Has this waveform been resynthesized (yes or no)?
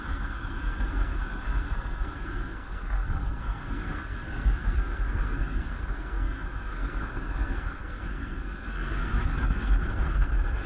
yes